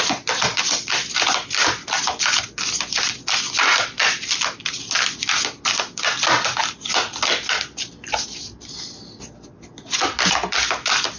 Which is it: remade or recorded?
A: recorded